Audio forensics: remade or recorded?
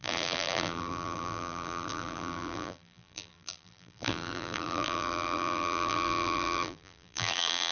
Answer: remade